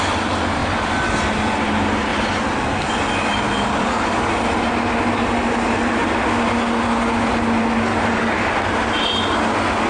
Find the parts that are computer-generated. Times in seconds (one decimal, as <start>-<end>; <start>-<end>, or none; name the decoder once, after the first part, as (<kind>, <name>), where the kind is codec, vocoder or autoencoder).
3.3-4.3 (codec, DAC); 7.9-8.5